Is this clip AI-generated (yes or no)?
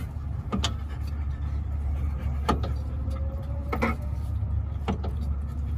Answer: no